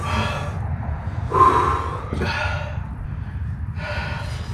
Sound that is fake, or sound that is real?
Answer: real